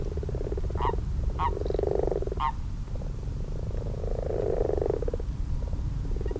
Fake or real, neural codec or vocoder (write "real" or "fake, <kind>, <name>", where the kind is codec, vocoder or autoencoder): real